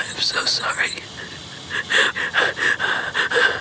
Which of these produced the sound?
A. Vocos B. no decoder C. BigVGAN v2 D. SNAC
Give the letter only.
B